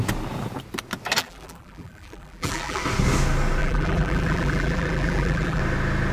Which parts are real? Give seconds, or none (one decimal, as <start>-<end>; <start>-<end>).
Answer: 0.0-1.2; 2.8-3.6; 5.6-6.1